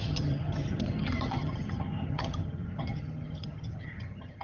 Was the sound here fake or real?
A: fake